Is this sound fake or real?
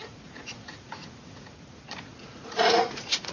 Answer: fake